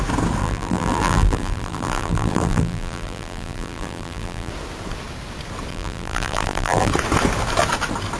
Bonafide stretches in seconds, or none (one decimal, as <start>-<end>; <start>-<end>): 0.0-0.4; 4.5-5.7; 6.9-8.2